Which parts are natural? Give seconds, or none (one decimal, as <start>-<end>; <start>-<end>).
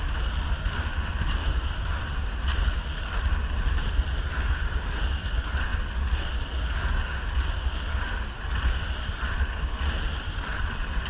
0.0-1.4; 1.9-11.1